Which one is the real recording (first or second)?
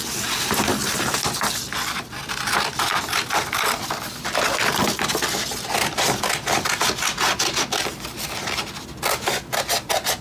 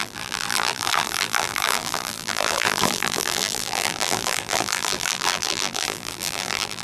first